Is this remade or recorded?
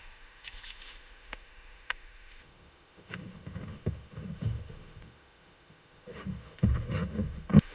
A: remade